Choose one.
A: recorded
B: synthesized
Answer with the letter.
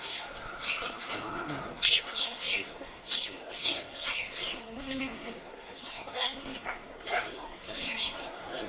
B